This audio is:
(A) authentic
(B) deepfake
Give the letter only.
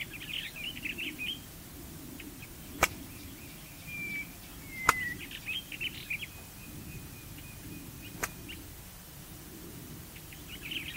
B